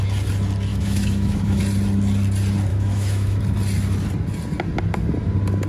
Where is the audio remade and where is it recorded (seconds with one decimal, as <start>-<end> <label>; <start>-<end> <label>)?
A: 0.0-0.7 recorded; 0.7-1.6 remade; 1.6-2.7 recorded; 2.7-3.4 remade; 3.4-5.7 recorded